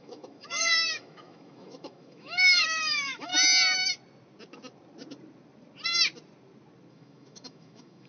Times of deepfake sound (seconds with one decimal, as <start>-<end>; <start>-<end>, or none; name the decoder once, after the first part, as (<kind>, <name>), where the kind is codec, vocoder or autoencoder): 0.0-3.3 (autoencoder, DAC-VAE); 6.9-8.1